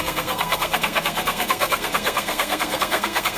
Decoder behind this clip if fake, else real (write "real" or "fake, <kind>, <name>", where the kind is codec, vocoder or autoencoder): fake, codec, SNAC